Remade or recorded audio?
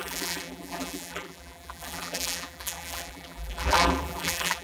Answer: remade